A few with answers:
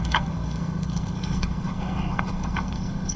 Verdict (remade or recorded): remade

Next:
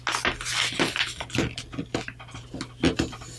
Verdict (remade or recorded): recorded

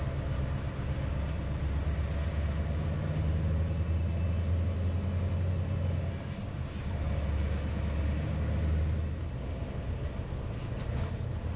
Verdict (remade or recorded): recorded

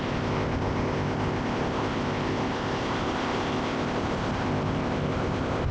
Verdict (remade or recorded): remade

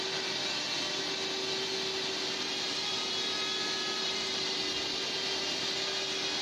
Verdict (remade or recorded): recorded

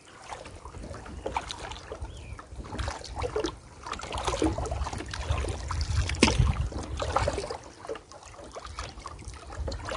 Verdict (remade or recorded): recorded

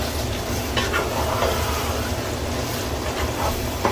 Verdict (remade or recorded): recorded